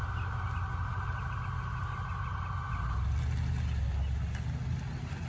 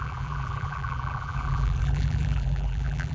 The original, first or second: first